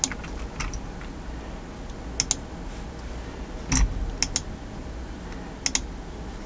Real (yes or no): yes